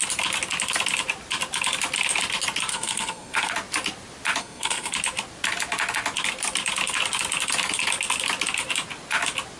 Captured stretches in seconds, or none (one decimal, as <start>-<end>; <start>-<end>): 0.0-2.7; 3.5-4.4; 4.9-9.6